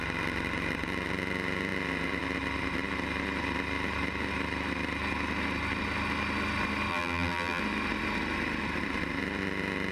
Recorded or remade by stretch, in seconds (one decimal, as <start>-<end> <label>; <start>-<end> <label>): 0.0-6.9 recorded; 6.9-7.6 remade; 7.6-9.9 recorded